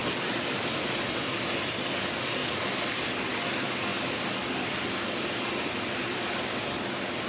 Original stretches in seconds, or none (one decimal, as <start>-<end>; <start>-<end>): 0.0-7.3